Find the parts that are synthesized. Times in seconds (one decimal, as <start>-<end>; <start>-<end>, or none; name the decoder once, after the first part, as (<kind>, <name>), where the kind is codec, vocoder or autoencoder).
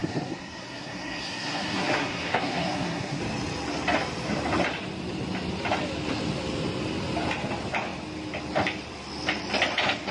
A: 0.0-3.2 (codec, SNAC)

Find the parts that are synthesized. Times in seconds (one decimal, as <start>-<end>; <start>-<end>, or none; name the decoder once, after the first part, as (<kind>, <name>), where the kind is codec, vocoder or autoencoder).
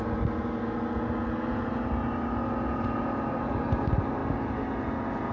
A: none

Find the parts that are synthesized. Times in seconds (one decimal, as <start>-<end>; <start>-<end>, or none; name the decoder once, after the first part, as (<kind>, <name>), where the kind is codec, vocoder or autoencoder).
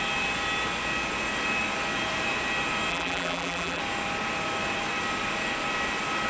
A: 2.9-3.8 (vocoder, BigVGAN v2)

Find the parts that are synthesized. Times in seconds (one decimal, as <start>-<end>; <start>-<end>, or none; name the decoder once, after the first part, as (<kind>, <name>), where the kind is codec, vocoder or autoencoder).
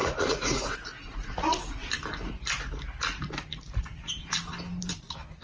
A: 0.0-1.9 (vocoder, Vocos)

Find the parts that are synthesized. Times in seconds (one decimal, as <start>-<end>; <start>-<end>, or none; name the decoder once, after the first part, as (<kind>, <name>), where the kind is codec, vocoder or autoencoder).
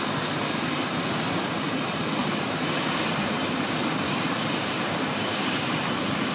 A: 2.2-5.3 (vocoder, BigVGAN v2)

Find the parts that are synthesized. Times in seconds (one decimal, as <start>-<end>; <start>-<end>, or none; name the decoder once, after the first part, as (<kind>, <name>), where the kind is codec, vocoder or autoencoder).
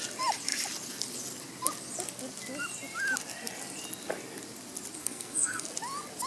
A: 5.0-5.6 (codec, SNAC)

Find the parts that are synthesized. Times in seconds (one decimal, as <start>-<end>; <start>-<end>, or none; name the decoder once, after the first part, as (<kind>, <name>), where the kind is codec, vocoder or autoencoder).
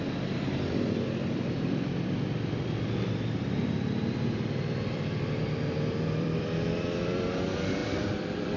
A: 0.0-8.6 (vocoder, BigVGAN v2)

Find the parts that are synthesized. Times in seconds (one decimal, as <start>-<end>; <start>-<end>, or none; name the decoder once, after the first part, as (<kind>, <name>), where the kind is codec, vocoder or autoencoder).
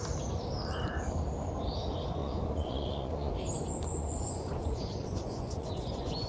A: 2.2-3.3 (vocoder, Vocos); 3.9-6.3